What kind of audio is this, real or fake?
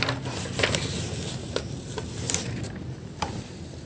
real